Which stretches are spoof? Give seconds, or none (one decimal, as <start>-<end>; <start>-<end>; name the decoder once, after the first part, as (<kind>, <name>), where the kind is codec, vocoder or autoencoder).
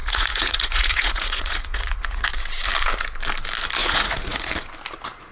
0.0-2.3 (vocoder, Vocos); 3.8-4.5